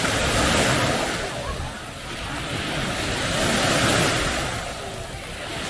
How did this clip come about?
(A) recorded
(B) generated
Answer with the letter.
A